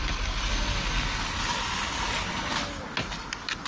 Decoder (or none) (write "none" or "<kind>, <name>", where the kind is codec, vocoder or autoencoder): none